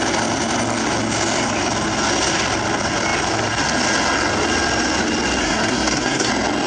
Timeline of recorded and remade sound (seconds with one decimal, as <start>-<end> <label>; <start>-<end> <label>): 0.0-5.4 recorded; 5.4-6.3 remade; 6.3-6.7 recorded